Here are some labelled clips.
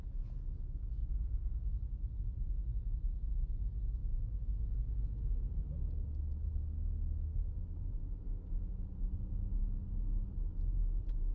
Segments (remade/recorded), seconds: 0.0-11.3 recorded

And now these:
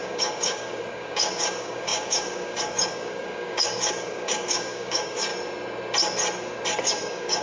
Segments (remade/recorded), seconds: 0.0-5.3 remade; 5.3-6.8 recorded; 6.8-7.4 remade

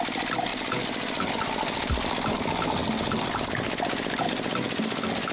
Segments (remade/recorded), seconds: 0.0-5.3 recorded

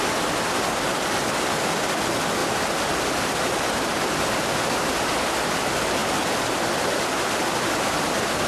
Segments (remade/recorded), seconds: 0.0-2.4 recorded; 2.4-3.4 remade; 3.4-8.5 recorded